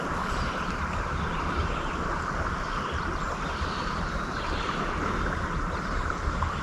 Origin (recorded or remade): remade